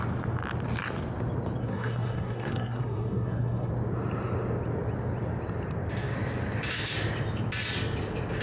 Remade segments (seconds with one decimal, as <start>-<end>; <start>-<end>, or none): 1.6-3.7